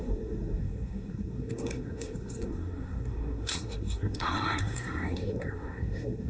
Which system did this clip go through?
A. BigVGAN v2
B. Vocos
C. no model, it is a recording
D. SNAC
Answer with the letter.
D